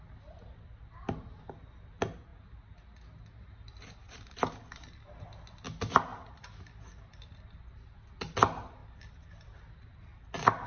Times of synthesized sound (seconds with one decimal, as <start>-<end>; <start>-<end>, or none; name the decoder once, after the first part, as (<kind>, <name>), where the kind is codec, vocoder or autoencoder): 6.1-6.6 (vocoder, BigVGAN v2); 8.8-9.3

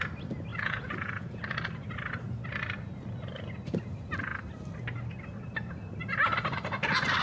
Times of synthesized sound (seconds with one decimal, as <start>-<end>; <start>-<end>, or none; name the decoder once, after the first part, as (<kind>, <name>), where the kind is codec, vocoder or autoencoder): 0.5-1.4 (vocoder, Vocos)